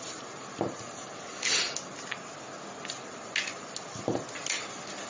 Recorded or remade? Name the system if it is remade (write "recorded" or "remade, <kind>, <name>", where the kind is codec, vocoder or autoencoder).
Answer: recorded